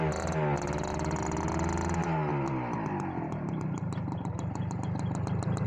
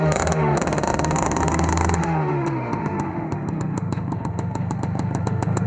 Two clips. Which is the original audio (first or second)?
first